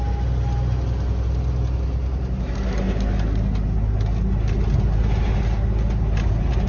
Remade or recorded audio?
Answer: recorded